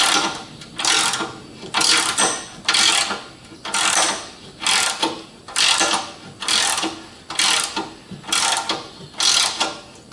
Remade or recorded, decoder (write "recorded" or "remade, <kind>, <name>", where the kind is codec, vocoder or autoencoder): recorded